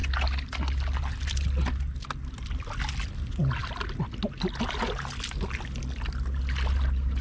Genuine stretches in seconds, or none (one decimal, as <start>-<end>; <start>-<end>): 0.0-7.2